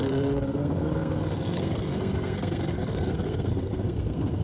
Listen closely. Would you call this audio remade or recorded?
remade